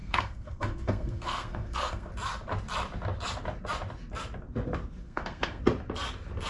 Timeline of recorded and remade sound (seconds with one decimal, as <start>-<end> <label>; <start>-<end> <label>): 0.0-2.1 remade; 2.1-5.0 recorded; 5.0-5.6 remade; 5.6-6.5 recorded